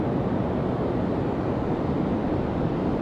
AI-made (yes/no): no